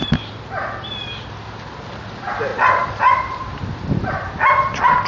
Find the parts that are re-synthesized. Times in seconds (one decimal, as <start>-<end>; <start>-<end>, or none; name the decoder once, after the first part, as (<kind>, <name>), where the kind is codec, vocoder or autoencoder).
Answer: none